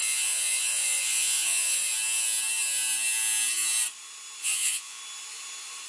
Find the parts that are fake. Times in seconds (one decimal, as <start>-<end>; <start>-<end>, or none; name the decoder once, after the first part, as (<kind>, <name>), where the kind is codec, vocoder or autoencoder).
0.0-1.9 (vocoder, Vocos); 4.4-5.0